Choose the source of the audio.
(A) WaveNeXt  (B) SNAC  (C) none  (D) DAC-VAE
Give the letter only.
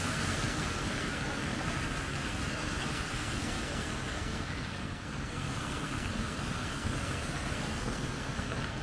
B